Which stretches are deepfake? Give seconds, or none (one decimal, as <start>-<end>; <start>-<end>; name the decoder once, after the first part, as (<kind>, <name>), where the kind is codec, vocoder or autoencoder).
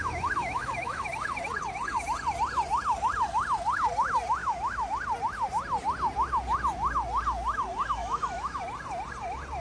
0.0-1.0 (autoencoder, DAC-VAE); 4.4-4.9; 8.0-8.6